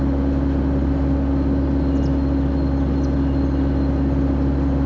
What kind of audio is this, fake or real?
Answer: real